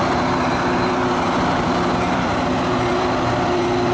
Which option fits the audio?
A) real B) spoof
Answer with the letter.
B